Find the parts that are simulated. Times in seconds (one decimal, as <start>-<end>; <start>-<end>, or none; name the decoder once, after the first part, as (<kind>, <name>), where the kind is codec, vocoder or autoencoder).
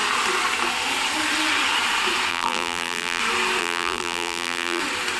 2.3-3.2 (vocoder, BigVGAN v2); 3.6-4.8